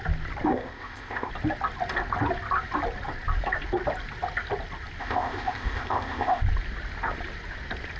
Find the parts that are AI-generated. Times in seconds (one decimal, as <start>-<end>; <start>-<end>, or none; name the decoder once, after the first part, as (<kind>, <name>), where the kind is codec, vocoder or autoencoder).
0.5-1.3 (codec, ZipCodec); 5.0-6.4